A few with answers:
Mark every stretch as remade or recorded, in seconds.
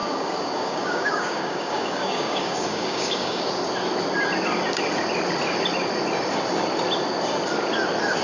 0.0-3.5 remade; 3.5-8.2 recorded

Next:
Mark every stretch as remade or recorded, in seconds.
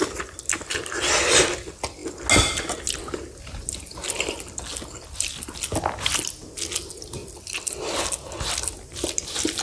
0.0-9.6 recorded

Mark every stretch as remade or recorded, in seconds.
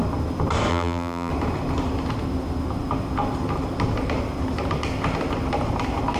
0.0-0.7 recorded; 0.7-1.3 remade; 1.3-6.2 recorded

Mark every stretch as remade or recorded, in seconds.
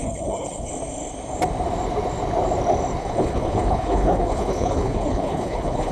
0.0-0.7 remade; 0.7-3.0 recorded; 3.0-5.9 remade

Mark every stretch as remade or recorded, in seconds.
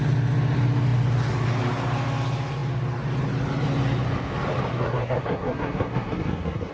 0.0-4.7 recorded; 4.7-6.7 remade